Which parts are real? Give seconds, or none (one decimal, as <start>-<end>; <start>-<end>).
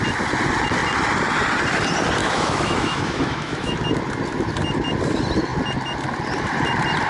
0.0-2.2; 3.8-7.1